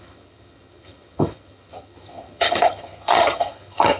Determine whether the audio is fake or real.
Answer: fake